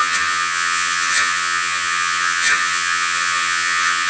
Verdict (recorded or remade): remade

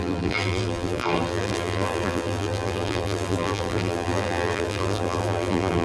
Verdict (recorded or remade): remade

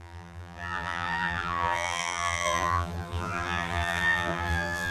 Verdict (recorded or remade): remade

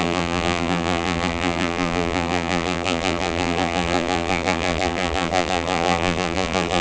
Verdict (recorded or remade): remade